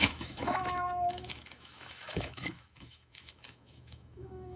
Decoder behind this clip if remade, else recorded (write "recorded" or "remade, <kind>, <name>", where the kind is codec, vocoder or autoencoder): remade, autoencoder, DAC-VAE